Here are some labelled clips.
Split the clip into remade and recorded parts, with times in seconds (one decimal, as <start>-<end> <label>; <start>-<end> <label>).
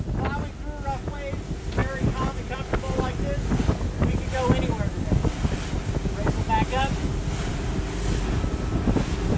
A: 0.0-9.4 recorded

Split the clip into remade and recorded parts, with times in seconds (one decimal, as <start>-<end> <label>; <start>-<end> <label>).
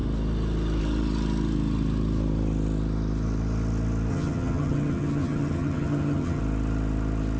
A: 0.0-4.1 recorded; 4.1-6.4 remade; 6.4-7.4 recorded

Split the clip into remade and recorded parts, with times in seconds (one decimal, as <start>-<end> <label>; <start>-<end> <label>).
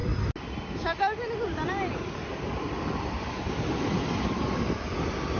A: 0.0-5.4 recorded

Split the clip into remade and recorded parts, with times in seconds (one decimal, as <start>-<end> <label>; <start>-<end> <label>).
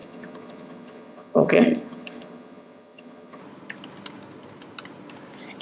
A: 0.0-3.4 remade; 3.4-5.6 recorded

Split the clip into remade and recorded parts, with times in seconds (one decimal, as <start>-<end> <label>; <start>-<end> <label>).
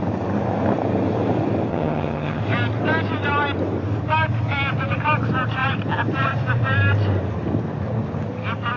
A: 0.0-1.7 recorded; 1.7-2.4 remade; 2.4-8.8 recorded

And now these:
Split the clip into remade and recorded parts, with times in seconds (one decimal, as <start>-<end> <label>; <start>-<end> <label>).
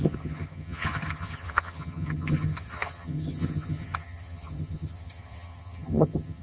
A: 0.0-6.4 remade